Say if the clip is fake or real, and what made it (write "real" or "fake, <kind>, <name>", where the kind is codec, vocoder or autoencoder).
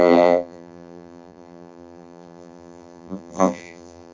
fake, vocoder, BigVGAN v2